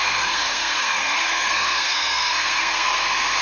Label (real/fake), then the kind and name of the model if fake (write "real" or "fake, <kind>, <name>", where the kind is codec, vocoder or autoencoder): fake, codec, SNAC